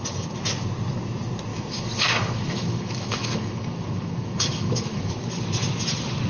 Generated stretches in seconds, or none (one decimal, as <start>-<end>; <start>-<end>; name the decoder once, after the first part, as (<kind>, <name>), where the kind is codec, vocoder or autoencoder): 1.5-5.1 (autoencoder, DAC-VAE)